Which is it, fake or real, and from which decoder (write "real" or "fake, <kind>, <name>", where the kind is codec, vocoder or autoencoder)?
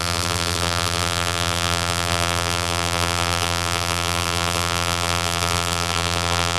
fake, vocoder, BigVGAN v2